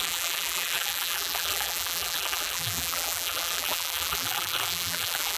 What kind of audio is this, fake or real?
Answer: fake